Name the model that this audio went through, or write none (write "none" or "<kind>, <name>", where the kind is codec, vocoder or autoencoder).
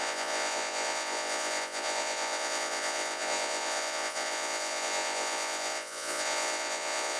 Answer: vocoder, Vocos